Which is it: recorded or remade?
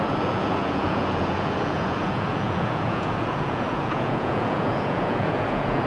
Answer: remade